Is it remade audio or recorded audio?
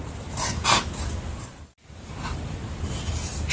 recorded